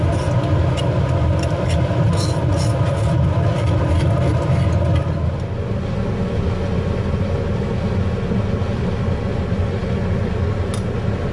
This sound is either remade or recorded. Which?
recorded